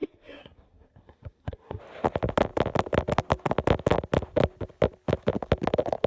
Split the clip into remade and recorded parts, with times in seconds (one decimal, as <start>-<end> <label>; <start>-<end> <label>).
0.0-1.8 remade; 1.8-6.1 recorded